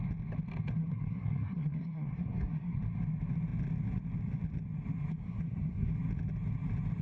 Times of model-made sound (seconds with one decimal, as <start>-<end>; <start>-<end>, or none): 0.8-2.8; 5.1-5.9